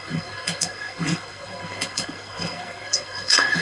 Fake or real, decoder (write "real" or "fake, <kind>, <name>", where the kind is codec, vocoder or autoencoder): fake, codec, SNAC